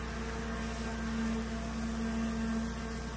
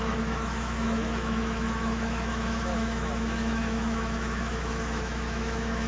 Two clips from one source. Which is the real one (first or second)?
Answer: first